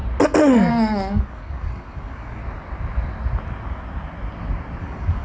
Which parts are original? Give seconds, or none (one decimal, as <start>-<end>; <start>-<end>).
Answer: 0.0-0.7; 2.4-4.8

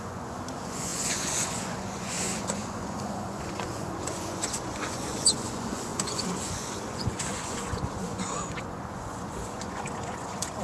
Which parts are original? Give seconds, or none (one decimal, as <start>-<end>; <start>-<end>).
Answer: none

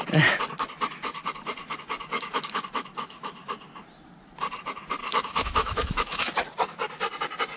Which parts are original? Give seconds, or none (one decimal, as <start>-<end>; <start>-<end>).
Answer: 0.0-1.6; 3.4-5.0; 6.3-7.6

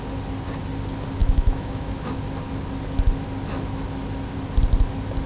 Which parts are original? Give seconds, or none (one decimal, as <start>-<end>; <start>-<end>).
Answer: 0.0-1.2; 2.2-5.3